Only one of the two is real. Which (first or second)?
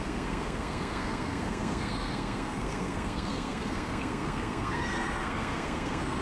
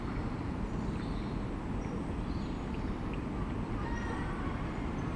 second